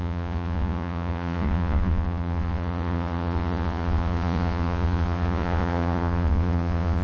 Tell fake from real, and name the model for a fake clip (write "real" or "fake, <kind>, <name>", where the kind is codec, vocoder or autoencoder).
fake, vocoder, Vocos